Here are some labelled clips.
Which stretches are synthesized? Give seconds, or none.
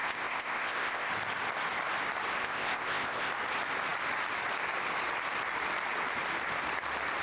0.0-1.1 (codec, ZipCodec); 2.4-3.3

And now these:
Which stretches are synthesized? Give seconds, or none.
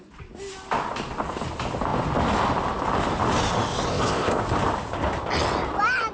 3.9-4.4 (codec, ZipCodec)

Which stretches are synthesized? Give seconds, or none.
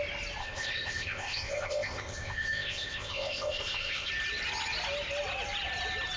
0.4-4.1 (codec, ZipCodec)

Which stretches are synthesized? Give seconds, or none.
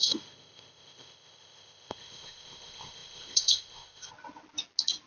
0.0-4.1 (codec, ZipCodec)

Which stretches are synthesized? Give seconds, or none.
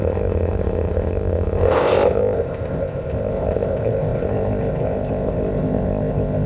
0.0-6.5 (codec, ZipCodec)